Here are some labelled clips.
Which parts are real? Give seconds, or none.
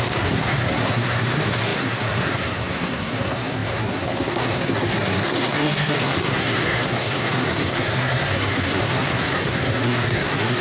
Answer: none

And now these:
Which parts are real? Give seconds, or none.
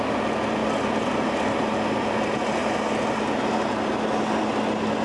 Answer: 0.0-5.0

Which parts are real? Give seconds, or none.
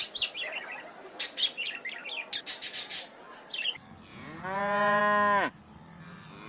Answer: 0.0-4.1; 5.0-6.5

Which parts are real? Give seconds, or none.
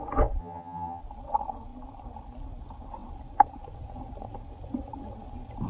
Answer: 0.0-0.4; 1.0-5.7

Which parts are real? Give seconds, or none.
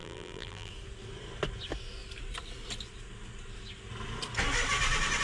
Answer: 0.7-5.2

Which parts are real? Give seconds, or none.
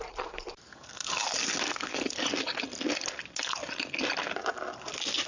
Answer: 0.0-5.3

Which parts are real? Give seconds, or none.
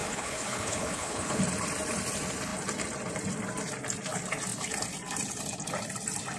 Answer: 1.4-6.4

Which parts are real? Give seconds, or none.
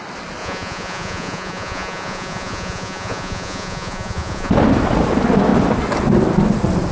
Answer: 0.0-0.4; 4.5-6.9